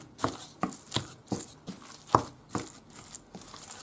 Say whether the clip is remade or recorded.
recorded